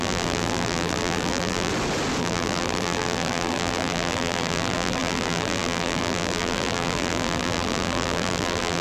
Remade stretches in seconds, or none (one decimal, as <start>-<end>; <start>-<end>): 0.0-1.7; 2.2-8.8